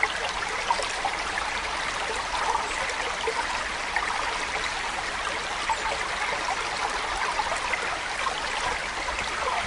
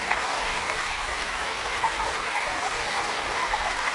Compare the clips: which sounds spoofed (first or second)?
second